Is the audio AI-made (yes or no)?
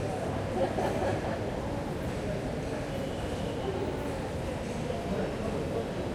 no